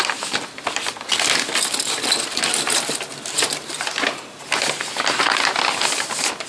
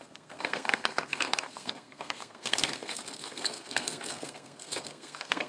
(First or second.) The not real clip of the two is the second